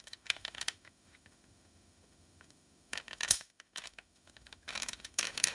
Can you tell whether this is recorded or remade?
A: remade